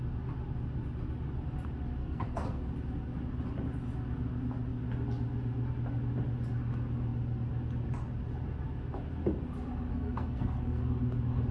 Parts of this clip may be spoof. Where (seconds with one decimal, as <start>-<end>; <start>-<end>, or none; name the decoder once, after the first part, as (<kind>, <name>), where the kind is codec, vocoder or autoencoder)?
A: 2.0-2.6 (codec, SNAC); 9.9-10.8